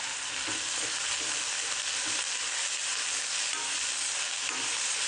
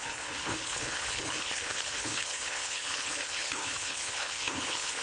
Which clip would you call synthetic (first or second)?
second